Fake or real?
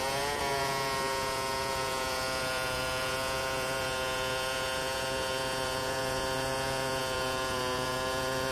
fake